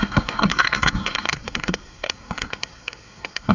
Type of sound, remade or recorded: remade